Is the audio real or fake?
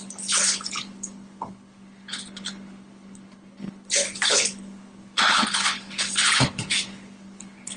fake